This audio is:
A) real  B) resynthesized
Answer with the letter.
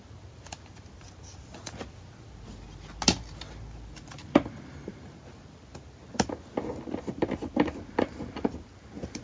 A